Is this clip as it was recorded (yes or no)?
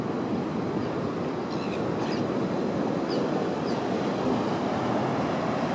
yes